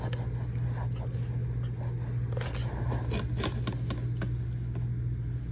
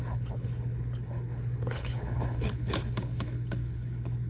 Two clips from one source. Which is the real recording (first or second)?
first